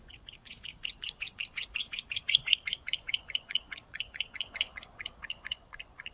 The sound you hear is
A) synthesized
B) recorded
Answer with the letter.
A